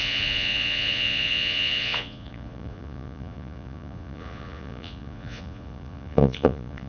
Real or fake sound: fake